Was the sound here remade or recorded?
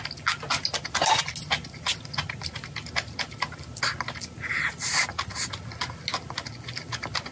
recorded